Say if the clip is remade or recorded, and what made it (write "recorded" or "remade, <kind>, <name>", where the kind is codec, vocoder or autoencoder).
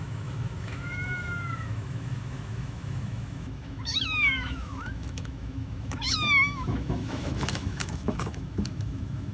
remade, autoencoder, DAC-VAE